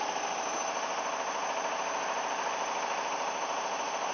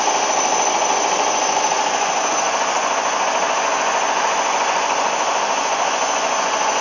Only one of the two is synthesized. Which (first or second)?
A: second